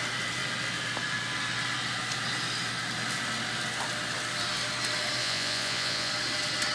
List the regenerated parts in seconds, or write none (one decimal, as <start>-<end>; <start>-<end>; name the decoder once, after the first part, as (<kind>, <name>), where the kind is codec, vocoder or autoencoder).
5.2-6.1 (vocoder, Vocos)